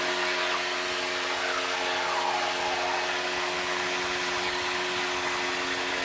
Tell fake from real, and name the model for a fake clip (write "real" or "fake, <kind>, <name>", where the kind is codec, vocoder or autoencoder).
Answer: real